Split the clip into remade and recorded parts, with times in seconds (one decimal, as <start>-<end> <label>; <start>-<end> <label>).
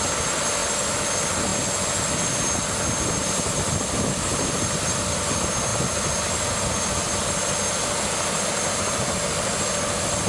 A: 0.0-10.3 recorded